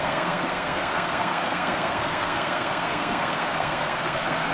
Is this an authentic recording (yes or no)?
no